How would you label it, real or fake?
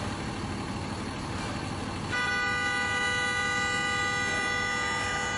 real